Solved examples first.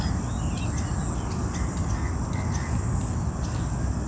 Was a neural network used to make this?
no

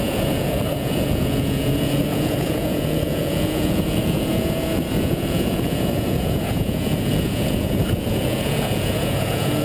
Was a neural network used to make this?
yes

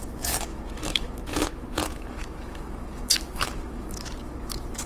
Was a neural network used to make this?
yes